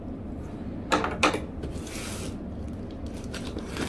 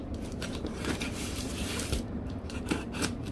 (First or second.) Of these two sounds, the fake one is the second